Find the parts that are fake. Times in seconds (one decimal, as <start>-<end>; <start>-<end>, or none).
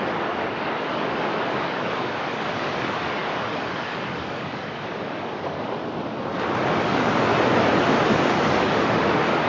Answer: 0.0-5.8; 6.8-7.3; 8.2-9.5